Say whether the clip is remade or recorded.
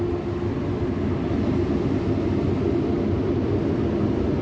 recorded